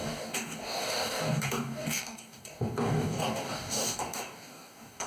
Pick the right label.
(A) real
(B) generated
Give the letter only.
B